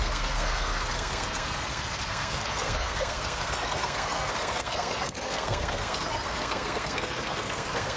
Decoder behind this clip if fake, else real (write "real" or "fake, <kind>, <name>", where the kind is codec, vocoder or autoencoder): fake, codec, SNAC